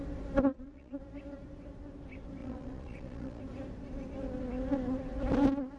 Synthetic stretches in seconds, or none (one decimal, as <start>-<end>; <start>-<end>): 0.5-1.0; 2.4-3.4